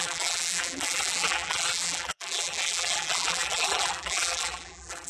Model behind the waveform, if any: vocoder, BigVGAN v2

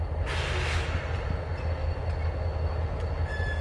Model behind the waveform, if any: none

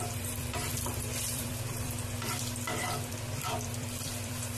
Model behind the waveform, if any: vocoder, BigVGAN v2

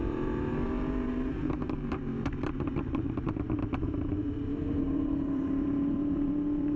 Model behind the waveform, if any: vocoder, BigVGAN v2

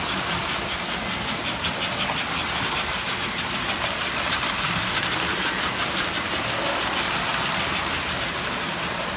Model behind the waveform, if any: vocoder, BigVGAN v2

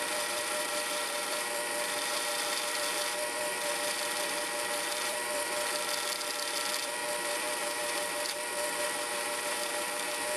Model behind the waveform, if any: vocoder, BigVGAN v2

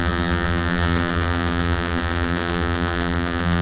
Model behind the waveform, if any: vocoder, BigVGAN v2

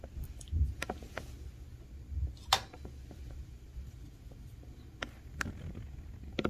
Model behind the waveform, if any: none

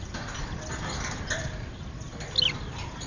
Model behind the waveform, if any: none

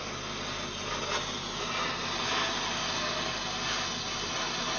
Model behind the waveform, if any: none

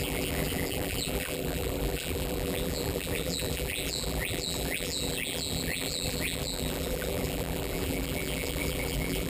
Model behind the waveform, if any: vocoder, BigVGAN v2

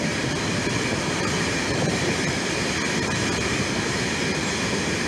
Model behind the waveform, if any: vocoder, BigVGAN v2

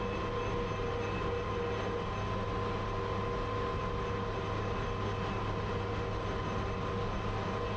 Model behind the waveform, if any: none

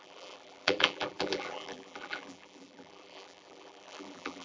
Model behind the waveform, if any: vocoder, BigVGAN v2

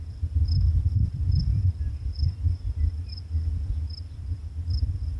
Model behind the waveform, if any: vocoder, BigVGAN v2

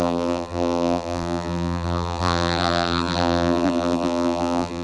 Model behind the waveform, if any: vocoder, BigVGAN v2